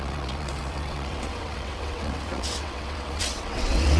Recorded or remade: remade